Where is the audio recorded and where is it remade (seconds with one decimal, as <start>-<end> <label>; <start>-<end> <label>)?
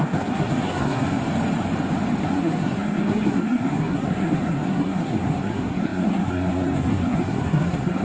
0.0-1.2 remade; 1.2-2.2 recorded; 2.2-8.0 remade